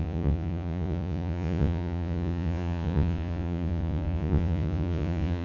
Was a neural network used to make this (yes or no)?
yes